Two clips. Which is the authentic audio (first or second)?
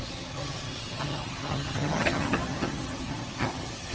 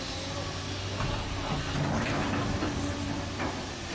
second